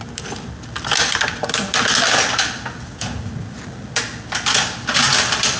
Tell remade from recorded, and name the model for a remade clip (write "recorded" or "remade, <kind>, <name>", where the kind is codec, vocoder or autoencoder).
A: recorded